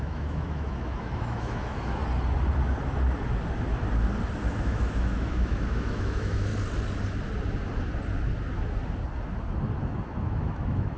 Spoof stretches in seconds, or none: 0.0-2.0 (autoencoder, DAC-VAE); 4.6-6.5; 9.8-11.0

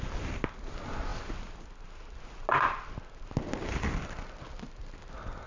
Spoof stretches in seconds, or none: none

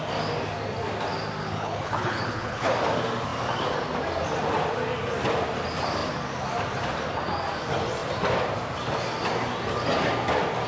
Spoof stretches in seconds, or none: 1.4-2.7 (codec, HILCodec)